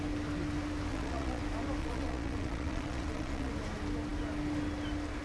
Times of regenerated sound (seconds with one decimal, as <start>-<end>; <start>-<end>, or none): 0.9-1.4; 1.8-3.5

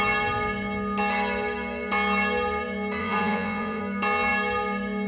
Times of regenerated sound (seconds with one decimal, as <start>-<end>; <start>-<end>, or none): 3.0-3.8

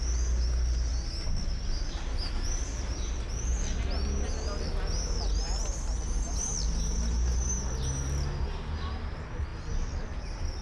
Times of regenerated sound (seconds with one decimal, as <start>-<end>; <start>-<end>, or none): none

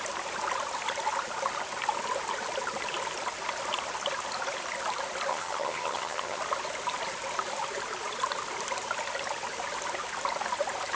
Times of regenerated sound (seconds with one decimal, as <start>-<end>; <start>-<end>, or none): 5.3-6.4

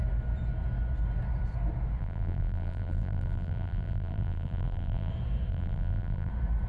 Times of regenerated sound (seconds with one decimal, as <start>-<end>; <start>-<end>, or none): 2.0-5.1; 5.5-6.3